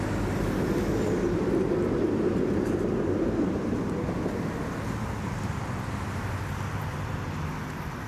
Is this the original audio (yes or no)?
yes